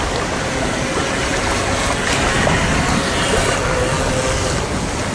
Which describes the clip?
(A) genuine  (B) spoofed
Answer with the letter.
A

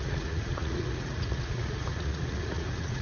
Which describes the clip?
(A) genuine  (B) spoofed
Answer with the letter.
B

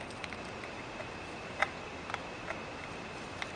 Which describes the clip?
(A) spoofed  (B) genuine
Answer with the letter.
B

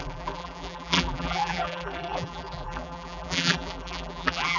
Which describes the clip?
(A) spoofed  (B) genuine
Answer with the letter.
A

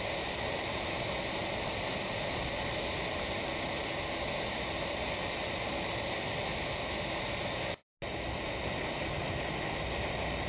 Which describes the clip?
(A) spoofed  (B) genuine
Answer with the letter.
B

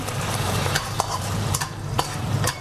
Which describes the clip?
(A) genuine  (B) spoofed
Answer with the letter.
B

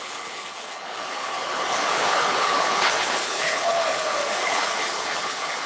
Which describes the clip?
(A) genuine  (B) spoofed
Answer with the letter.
B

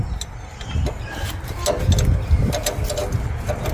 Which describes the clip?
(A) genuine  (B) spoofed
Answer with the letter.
A